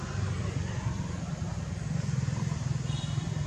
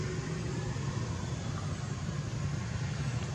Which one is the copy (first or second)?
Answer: first